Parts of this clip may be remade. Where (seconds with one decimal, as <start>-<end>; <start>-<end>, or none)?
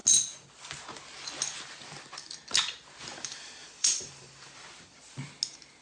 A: 3.6-4.3